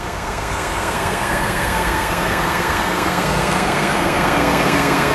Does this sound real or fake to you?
fake